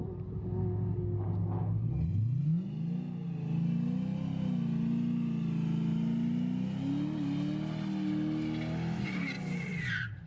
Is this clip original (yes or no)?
yes